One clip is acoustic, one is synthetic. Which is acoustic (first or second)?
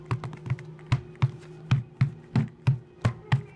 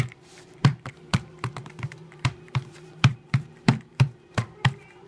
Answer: first